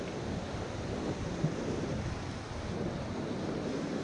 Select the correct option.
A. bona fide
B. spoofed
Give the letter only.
A